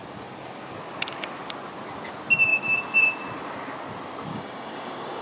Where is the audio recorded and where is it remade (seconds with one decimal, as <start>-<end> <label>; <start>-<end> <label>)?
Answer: 0.0-4.3 recorded; 4.3-5.2 remade